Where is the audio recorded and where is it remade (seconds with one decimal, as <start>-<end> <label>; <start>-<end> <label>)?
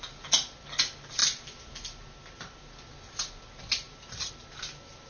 0.0-5.1 recorded